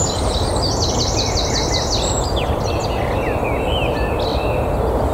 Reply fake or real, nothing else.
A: real